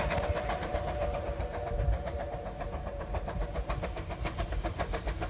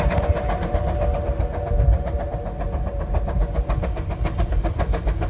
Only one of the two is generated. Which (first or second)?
first